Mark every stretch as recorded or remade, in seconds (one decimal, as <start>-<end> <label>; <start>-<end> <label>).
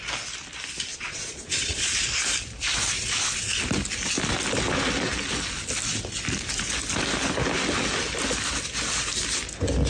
0.0-0.9 recorded; 0.9-2.2 remade; 2.2-9.9 recorded